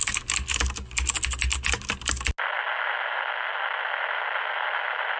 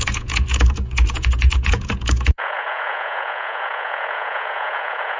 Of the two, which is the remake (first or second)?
second